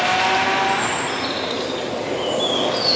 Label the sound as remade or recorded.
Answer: recorded